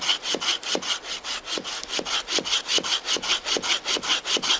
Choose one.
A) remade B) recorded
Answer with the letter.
B